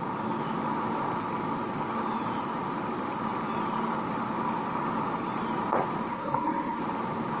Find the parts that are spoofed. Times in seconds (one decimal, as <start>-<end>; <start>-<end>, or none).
6.1-6.8